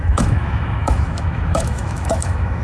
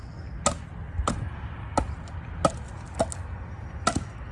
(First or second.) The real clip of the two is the second